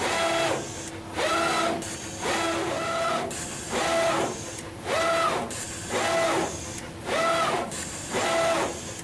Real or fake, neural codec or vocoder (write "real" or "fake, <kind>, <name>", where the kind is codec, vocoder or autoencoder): real